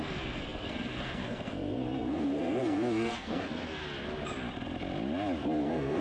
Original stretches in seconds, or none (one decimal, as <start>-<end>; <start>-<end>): 3.8-5.6